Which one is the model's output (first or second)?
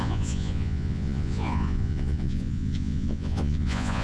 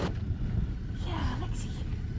first